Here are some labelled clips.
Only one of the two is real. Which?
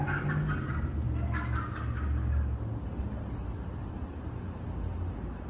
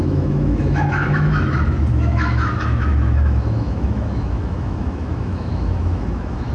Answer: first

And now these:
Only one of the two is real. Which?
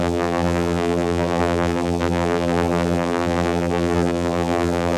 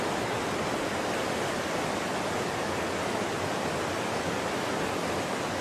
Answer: second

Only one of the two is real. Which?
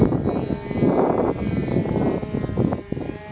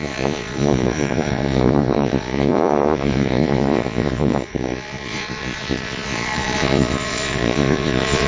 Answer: first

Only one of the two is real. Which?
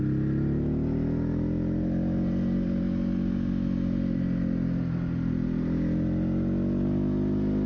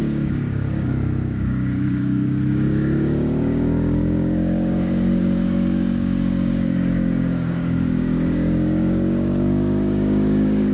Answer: first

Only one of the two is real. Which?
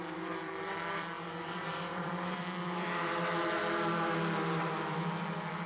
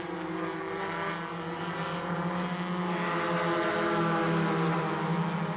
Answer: second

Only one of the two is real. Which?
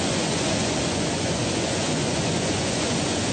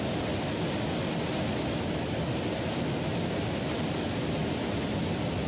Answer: second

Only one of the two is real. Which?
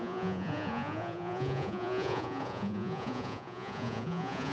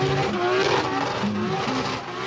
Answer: second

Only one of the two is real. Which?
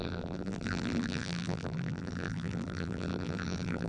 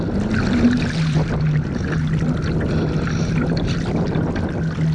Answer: second